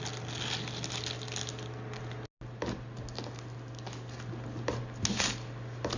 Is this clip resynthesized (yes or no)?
no